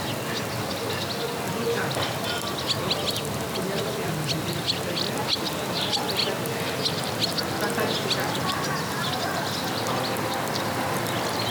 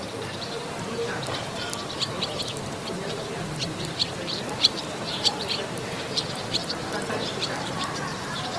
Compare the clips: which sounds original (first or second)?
first